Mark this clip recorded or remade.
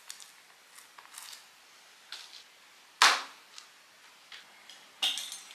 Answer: recorded